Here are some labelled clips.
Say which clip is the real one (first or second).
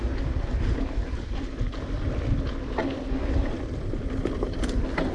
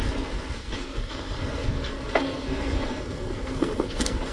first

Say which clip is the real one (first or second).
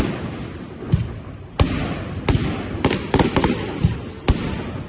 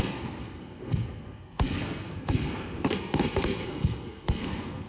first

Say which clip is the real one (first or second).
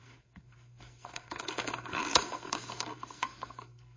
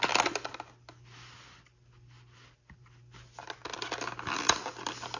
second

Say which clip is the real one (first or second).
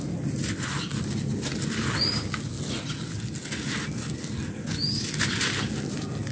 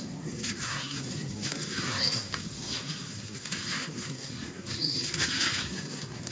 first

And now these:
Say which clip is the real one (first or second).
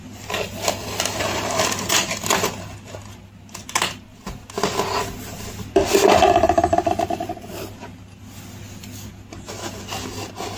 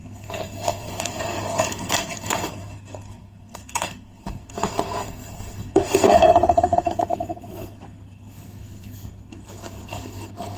first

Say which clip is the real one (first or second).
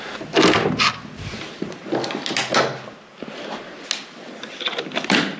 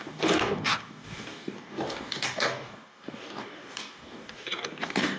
first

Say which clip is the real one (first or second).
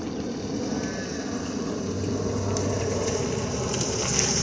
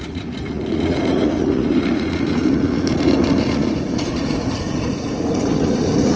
first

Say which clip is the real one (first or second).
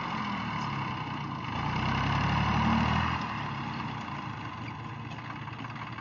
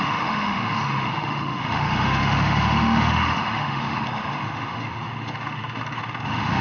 first